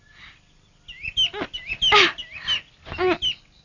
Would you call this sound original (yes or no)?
yes